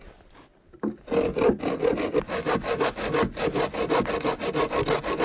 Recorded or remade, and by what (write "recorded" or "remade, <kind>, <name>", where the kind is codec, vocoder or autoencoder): recorded